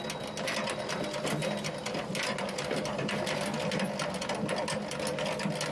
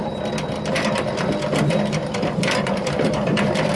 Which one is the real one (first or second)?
first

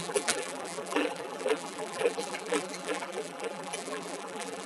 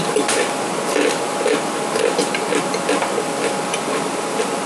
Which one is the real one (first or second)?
second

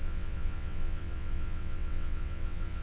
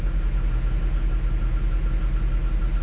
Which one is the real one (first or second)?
second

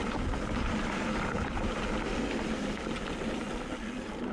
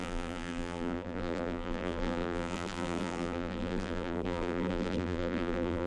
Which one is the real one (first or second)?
first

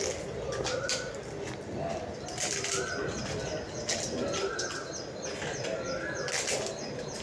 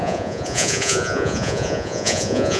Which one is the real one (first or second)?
first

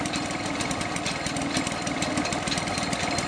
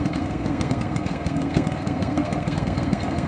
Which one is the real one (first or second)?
first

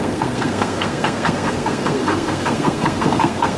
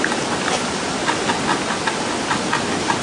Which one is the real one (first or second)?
second